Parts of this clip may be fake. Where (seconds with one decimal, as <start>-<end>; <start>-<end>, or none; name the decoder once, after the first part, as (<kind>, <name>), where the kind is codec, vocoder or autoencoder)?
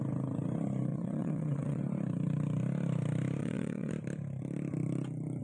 0.9-1.8 (vocoder, WaveNeXt); 3.4-3.9